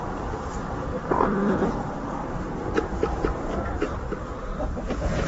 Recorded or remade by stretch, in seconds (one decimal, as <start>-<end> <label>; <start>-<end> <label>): 0.0-2.2 recorded; 2.2-3.9 remade; 3.9-5.3 recorded